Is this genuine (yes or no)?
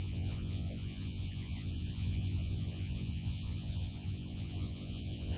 no